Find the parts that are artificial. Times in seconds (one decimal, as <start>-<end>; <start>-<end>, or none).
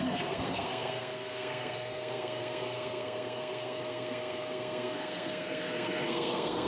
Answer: 0.0-6.7